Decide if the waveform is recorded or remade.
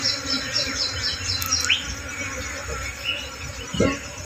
recorded